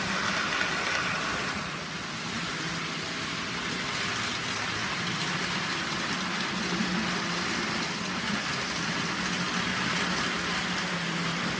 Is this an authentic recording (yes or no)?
yes